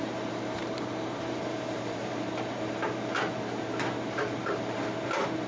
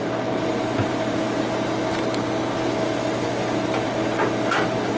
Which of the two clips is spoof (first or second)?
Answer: first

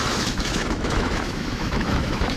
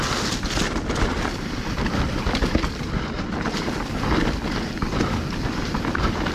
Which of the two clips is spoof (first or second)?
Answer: first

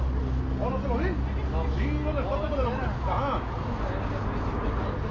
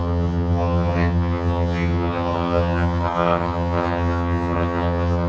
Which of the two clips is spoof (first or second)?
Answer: second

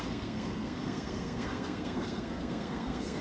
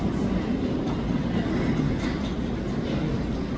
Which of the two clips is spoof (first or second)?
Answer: first